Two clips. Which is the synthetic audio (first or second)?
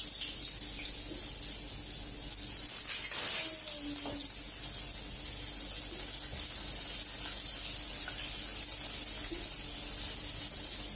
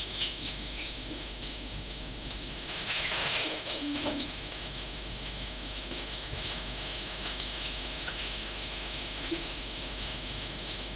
second